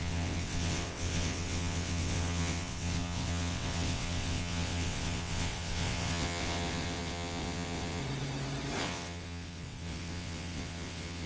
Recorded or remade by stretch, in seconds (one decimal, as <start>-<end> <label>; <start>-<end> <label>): 0.0-8.0 remade; 8.0-8.8 recorded; 8.8-11.3 remade